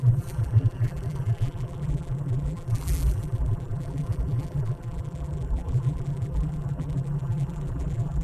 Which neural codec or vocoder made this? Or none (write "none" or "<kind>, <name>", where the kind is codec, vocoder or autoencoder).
vocoder, BigVGAN v2